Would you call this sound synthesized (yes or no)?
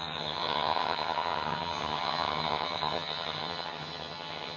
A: yes